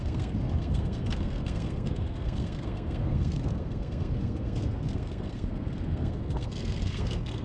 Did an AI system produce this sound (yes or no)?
yes